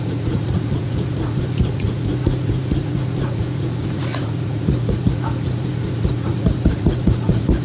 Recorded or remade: remade